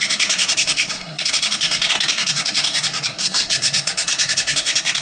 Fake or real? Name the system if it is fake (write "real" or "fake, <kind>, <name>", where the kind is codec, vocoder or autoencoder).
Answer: fake, codec, SNAC